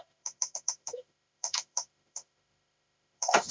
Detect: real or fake fake